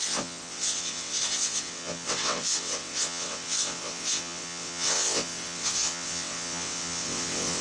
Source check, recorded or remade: remade